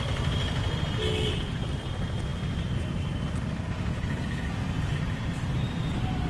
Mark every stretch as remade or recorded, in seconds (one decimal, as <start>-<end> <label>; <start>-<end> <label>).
0.0-3.9 recorded; 3.9-4.5 remade; 4.5-6.3 recorded